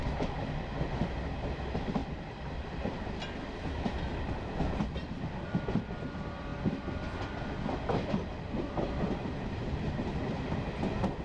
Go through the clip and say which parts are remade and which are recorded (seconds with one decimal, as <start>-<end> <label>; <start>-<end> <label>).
0.0-2.0 recorded; 2.0-3.4 remade; 3.4-11.2 recorded